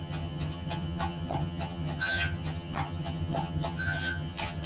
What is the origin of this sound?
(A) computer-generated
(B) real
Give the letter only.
A